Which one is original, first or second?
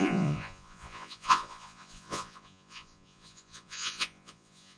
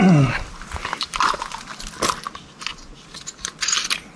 second